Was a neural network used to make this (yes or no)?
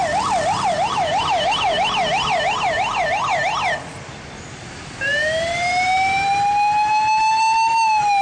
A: no